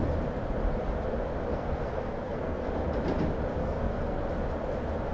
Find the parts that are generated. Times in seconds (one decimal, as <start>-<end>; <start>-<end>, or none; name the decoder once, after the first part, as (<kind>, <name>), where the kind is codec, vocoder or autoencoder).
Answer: 1.5-2.7 (codec, SNAC); 3.6-4.2